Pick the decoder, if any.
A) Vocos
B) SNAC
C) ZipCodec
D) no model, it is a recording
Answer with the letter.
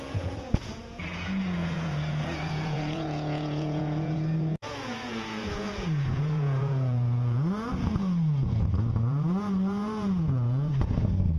A